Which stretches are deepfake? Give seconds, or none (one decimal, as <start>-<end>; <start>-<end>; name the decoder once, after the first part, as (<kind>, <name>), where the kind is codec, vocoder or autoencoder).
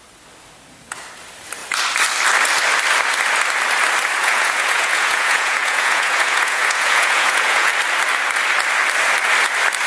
4.2-7.7 (vocoder, Vocos)